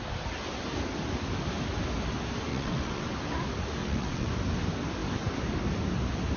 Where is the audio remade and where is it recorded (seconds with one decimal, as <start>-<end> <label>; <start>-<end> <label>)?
0.0-2.5 recorded; 2.5-3.1 remade; 3.1-3.8 recorded; 3.8-4.3 remade; 4.3-6.4 recorded